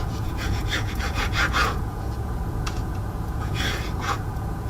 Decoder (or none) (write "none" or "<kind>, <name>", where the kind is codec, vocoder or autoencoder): vocoder, Vocos